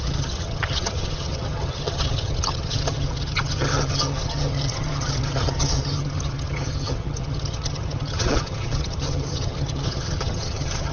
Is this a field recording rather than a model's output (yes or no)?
no